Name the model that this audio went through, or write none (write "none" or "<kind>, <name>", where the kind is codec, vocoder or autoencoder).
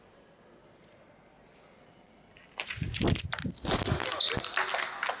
none